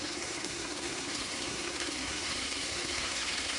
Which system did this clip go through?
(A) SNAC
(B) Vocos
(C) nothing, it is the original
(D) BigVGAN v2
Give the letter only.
A